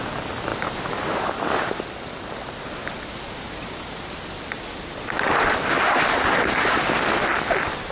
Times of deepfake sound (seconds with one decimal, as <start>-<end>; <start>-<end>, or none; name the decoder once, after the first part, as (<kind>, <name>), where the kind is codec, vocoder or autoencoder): 0.5-1.1 (vocoder, BigVGAN v2)